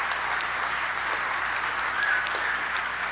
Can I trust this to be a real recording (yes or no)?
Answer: yes